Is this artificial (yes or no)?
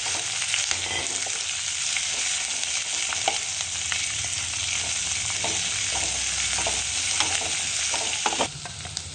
no